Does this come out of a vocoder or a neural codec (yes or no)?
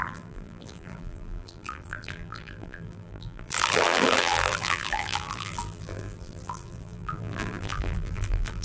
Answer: yes